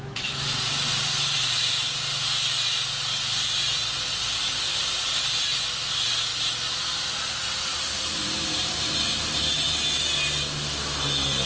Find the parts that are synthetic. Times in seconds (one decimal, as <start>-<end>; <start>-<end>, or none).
4.7-5.4; 7.7-9.4